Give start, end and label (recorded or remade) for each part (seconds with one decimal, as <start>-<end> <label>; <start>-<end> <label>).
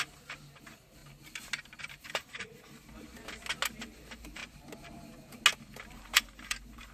0.0-1.0 remade; 1.0-1.8 recorded; 1.8-2.8 remade; 2.8-4.0 recorded; 4.0-4.4 remade; 4.4-5.9 recorded; 5.9-6.9 remade